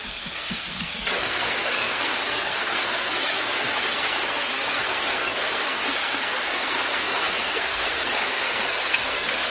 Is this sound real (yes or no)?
no